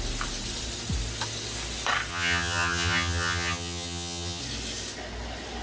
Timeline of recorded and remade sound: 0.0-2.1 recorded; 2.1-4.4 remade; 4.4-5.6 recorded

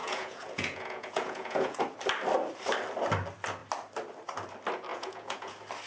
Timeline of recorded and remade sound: 0.0-1.8 remade; 1.8-4.9 recorded; 4.9-5.5 remade; 5.5-5.9 recorded

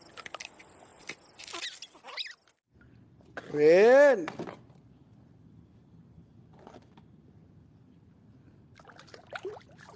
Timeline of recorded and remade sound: 0.0-10.0 recorded